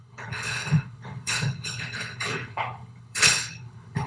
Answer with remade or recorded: remade